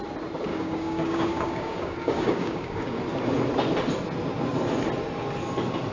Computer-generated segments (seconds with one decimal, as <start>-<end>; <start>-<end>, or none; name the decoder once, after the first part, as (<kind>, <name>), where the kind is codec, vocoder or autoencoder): 0.5-3.0 (codec, DAC)